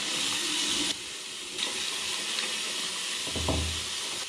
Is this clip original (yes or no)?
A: yes